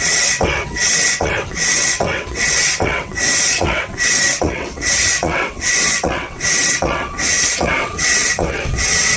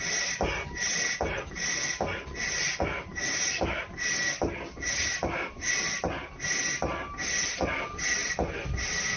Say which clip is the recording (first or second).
second